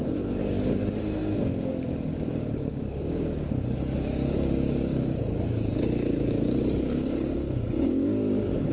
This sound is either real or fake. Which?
fake